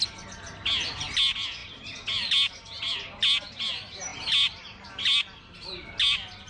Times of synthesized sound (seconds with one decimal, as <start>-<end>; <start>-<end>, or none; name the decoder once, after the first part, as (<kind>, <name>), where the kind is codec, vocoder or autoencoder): none